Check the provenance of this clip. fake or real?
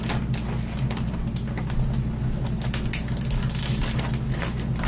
real